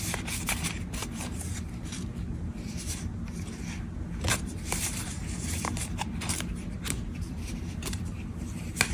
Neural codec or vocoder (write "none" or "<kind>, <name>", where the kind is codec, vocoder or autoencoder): vocoder, BigVGAN v2